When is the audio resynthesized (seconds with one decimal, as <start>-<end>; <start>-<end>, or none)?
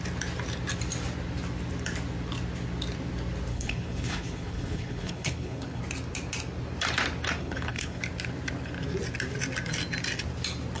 3.5-5.8; 7.4-8.0